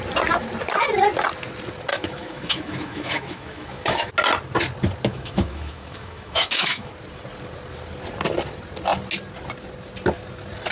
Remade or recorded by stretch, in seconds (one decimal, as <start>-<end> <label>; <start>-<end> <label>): 0.0-1.9 recorded; 1.9-4.1 remade; 4.1-5.1 recorded; 5.1-6.9 remade; 6.9-10.7 recorded